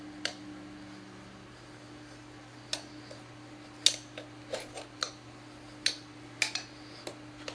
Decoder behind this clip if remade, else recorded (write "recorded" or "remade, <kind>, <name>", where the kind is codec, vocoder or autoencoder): recorded